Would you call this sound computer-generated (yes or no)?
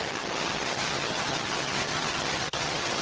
yes